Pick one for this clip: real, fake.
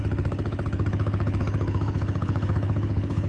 fake